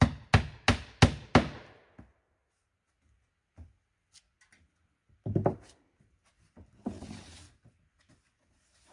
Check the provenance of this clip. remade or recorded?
recorded